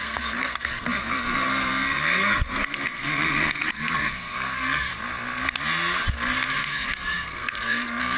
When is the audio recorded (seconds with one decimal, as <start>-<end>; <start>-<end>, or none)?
4.9-6.5